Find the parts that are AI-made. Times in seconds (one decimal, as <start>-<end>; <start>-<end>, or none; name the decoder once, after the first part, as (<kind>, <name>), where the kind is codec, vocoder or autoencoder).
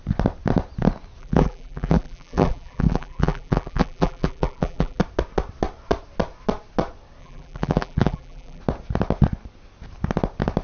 1.2-5.0 (vocoder, BigVGAN v2); 7.2-8.6